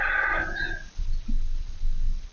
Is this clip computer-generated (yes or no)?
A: no